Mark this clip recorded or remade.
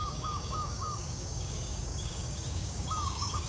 remade